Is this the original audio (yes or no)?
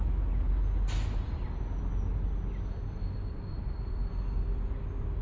yes